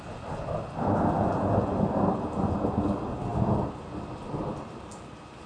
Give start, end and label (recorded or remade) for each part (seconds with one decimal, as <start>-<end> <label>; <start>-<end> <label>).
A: 0.0-5.5 recorded